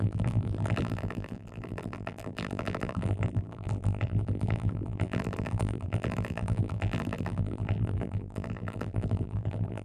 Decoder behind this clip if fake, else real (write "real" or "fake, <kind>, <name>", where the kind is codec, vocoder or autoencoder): fake, vocoder, BigVGAN v2